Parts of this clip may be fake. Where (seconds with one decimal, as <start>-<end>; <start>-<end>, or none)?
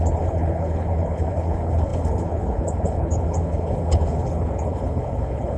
0.0-5.6